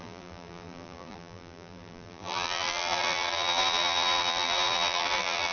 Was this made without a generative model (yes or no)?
no